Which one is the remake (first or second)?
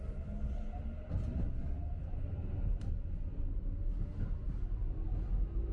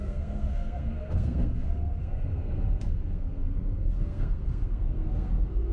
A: second